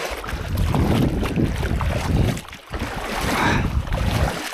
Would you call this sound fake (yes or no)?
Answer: no